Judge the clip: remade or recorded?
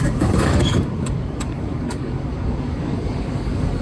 remade